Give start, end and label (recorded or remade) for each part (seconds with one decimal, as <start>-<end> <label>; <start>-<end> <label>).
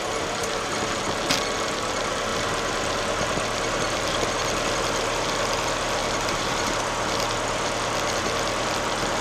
0.0-0.4 recorded; 0.4-1.0 remade; 1.0-6.0 recorded; 6.0-6.7 remade; 6.7-9.2 recorded